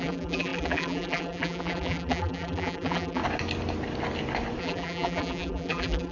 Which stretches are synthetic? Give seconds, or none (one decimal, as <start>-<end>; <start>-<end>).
0.0-3.2; 4.6-6.1